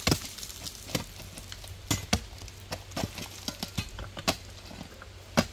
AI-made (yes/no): no